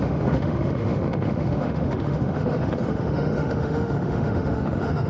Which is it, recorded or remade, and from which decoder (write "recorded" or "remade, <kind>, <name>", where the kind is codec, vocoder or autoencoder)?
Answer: remade, autoencoder, DAC-VAE